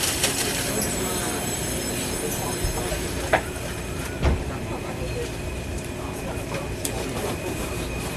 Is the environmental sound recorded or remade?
remade